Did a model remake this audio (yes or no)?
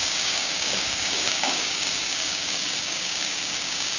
yes